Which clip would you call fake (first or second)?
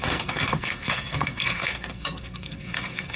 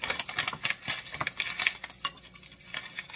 first